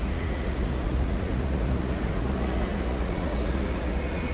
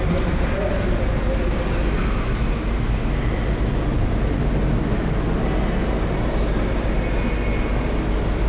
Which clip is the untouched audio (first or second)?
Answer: second